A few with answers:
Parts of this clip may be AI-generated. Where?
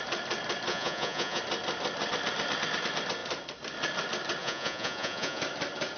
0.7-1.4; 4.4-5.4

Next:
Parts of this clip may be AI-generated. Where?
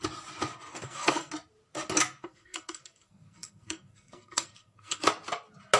0.7-1.3; 2.2-5.1